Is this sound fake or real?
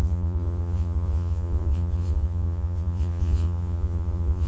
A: fake